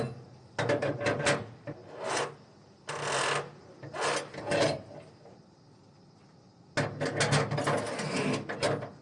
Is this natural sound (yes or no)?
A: yes